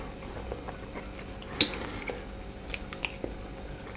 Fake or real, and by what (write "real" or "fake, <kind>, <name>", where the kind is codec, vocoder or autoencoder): real